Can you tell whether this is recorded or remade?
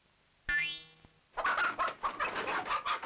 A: recorded